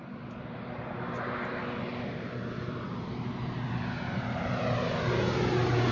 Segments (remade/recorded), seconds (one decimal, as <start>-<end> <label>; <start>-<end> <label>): 0.0-5.9 recorded